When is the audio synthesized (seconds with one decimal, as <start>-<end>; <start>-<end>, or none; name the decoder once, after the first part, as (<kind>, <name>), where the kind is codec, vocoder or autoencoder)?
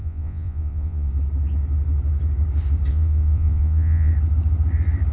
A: 0.0-1.1 (vocoder, Vocos); 2.9-4.1